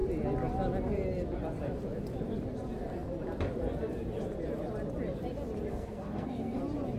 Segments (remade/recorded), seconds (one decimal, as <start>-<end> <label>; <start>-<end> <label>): 0.0-5.7 recorded; 5.7-6.6 remade; 6.6-7.0 recorded